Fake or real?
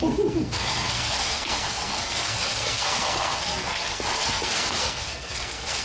fake